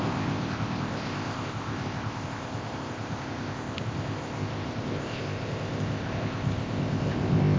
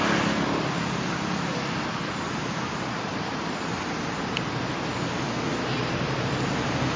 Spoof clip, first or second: first